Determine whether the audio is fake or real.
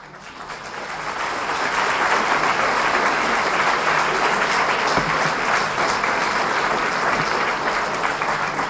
real